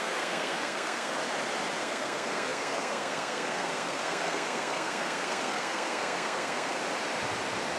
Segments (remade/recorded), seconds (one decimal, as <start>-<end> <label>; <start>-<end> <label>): 0.0-1.2 remade; 1.2-1.8 recorded; 1.8-6.8 remade; 6.8-7.8 recorded